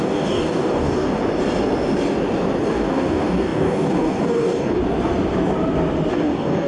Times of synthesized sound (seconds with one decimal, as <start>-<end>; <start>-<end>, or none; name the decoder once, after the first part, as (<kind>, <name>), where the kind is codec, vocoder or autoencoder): 0.0-1.2 (codec, DAC); 2.7-4.8; 6.1-6.7